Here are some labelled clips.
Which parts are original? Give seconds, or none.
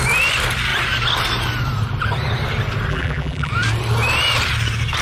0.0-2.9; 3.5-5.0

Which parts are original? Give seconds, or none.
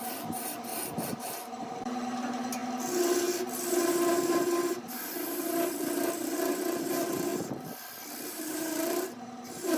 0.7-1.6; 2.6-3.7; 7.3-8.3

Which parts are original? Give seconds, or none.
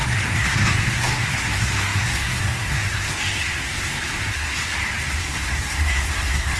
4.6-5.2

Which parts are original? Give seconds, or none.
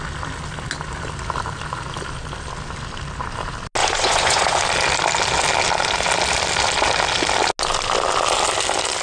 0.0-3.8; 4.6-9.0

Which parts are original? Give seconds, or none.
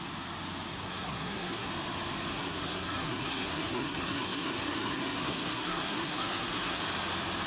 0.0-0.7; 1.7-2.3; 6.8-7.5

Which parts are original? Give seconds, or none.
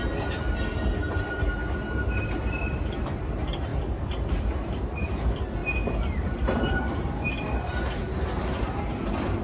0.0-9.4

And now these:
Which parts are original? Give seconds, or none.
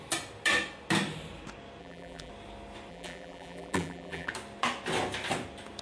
0.0-1.8; 2.3-2.9; 4.3-5.8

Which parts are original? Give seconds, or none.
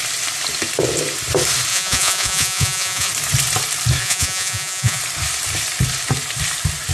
0.0-1.7; 3.1-4.0; 5.0-6.9